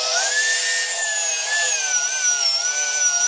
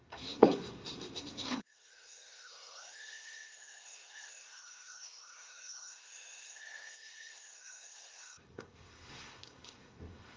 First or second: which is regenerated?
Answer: second